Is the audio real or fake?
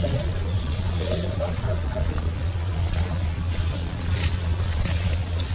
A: fake